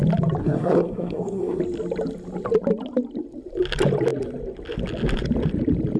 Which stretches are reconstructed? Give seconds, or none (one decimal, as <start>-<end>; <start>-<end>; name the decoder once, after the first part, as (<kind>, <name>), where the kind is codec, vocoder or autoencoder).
0.4-1.6 (codec, SNAC)